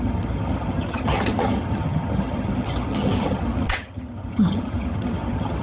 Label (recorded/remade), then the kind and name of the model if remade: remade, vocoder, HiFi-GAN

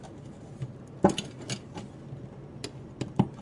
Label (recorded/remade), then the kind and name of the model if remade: recorded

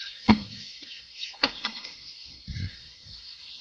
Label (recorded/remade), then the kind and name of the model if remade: remade, codec, SNAC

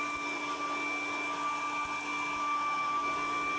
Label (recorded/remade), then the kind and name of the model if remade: recorded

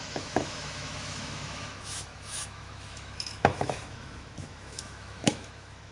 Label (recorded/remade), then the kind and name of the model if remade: remade, autoencoder, DAC-VAE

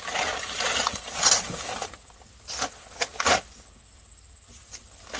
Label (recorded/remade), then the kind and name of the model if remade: recorded